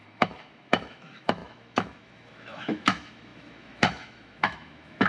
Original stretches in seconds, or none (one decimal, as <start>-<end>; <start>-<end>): none